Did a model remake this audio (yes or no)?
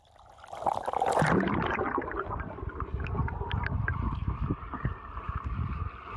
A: no